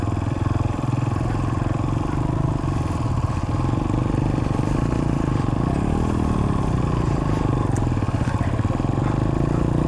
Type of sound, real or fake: real